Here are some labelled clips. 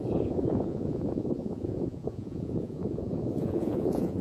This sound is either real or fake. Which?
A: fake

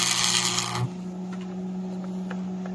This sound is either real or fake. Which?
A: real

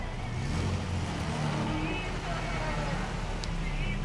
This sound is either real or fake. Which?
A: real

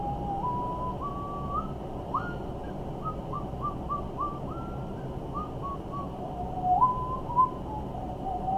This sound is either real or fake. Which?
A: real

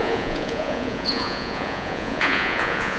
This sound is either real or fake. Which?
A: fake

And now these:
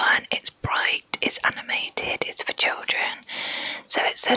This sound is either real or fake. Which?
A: real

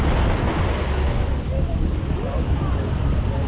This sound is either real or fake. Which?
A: real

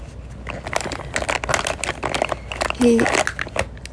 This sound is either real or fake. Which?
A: real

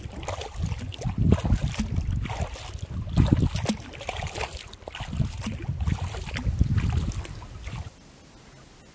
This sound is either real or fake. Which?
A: real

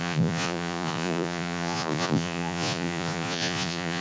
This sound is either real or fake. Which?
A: fake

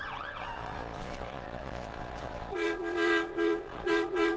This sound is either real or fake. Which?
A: fake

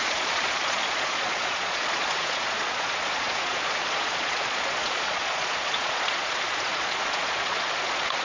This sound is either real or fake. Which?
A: fake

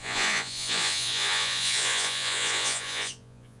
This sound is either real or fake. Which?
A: fake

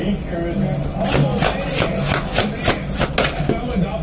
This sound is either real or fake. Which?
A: real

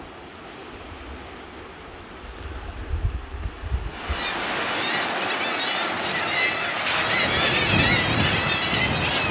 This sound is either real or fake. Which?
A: real